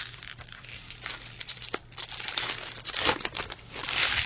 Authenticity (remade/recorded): remade